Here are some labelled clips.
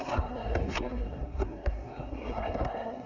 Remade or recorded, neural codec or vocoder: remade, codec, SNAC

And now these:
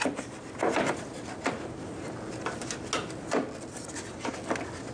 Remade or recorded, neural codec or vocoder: recorded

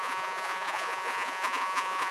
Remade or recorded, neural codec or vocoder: remade, vocoder, Vocos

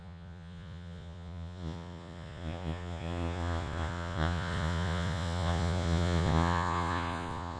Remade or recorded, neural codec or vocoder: remade, vocoder, Vocos